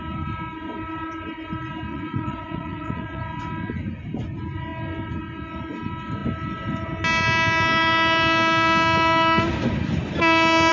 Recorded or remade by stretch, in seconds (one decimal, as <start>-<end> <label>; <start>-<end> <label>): 0.0-1.9 recorded; 1.9-3.2 remade; 3.2-10.7 recorded